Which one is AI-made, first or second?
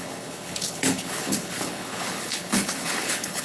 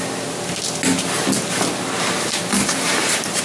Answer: first